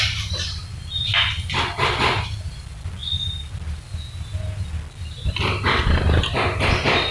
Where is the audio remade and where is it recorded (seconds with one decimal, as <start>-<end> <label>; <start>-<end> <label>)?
0.0-7.1 recorded